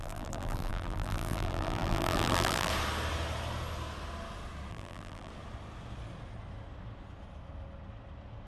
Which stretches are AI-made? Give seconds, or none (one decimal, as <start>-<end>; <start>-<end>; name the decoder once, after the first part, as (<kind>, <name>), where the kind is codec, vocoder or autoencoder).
0.0-2.7 (vocoder, BigVGAN v2); 4.7-5.3